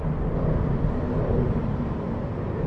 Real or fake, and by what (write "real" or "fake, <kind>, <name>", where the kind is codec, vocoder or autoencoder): real